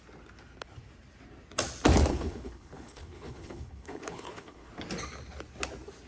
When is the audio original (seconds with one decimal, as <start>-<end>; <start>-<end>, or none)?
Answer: 0.0-2.1; 4.7-6.1